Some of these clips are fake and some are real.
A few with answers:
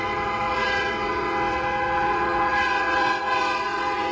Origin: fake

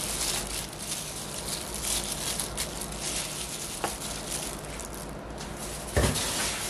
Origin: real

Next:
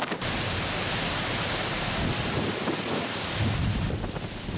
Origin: real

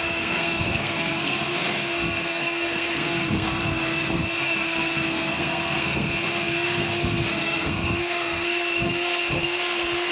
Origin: fake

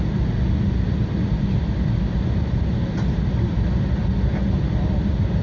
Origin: real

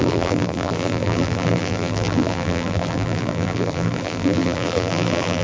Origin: fake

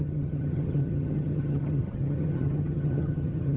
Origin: fake